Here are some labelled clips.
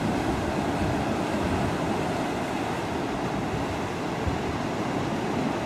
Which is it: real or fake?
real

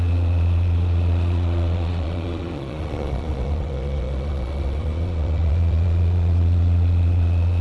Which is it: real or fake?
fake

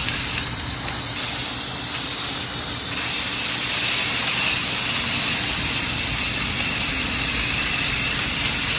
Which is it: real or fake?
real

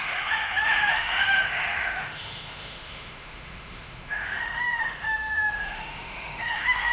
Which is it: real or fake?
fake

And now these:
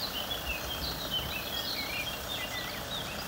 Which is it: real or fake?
real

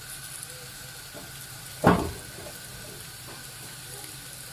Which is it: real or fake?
real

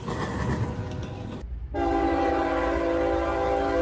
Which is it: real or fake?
real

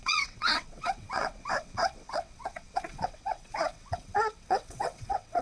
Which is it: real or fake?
fake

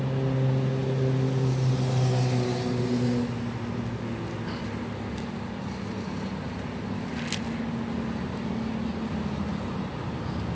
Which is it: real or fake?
real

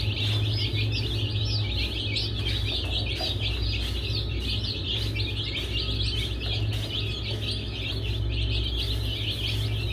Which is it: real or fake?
real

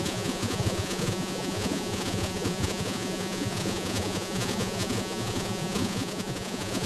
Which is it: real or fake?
fake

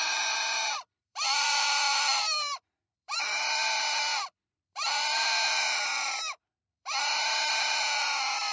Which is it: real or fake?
fake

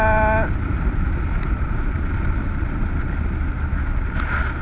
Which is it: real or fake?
real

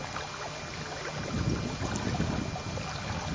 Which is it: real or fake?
real